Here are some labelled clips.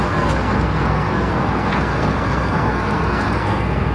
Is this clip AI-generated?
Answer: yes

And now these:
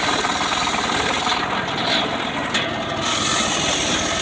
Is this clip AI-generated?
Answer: no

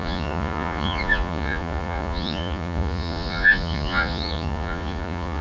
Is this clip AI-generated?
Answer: yes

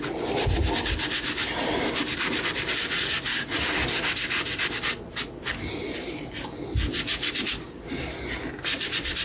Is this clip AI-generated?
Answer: no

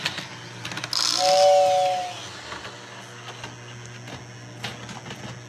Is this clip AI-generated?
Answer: no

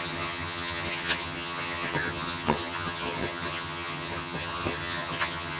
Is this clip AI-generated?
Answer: yes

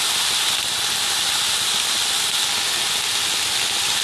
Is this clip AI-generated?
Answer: no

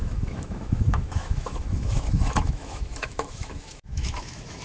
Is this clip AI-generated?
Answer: yes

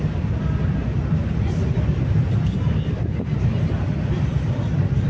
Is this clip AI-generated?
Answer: yes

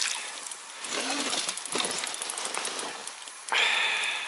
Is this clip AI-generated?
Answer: no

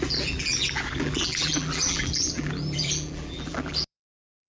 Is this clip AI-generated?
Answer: yes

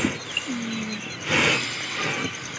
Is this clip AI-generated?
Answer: no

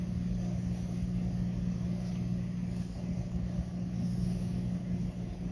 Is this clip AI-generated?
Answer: yes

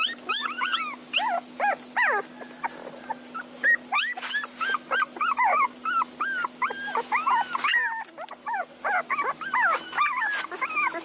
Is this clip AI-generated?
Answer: no